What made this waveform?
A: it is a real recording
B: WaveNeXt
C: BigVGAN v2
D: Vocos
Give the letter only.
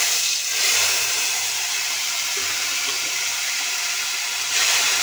C